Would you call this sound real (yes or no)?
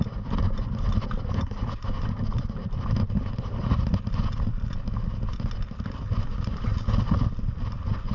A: yes